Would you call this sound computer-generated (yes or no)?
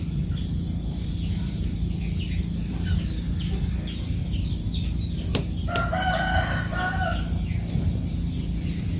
no